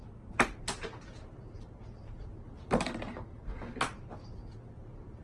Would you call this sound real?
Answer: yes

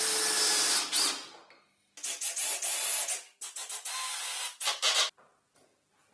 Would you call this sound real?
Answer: yes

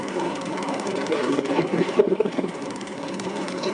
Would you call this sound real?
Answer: no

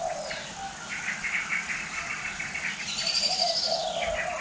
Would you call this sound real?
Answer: yes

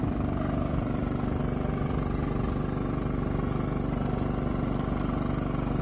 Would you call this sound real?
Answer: yes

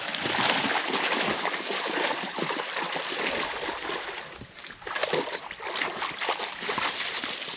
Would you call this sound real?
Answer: yes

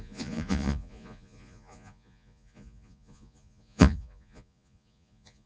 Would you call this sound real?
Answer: no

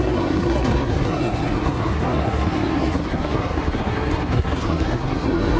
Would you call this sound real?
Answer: no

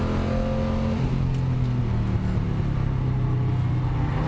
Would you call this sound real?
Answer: yes